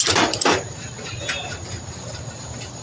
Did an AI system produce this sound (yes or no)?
yes